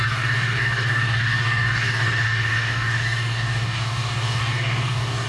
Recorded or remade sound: remade